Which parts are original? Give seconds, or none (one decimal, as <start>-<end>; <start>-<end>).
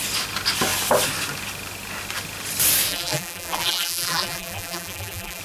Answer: 0.0-2.9